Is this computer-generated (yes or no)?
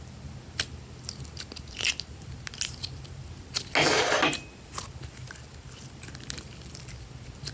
no